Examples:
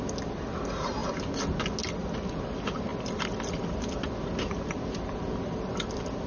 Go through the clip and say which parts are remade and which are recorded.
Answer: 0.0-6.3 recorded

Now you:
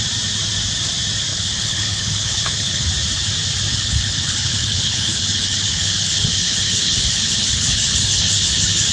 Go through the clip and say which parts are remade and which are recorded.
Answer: 0.0-1.3 recorded; 1.3-2.9 remade; 2.9-3.7 recorded; 3.7-8.9 remade

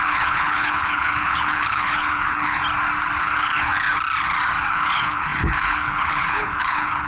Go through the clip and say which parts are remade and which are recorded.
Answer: 0.0-2.6 remade; 2.6-3.2 recorded; 3.2-3.7 remade; 3.7-4.7 recorded; 4.7-7.1 remade